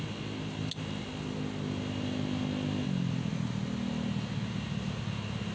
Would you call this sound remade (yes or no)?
no